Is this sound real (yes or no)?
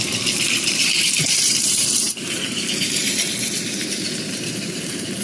no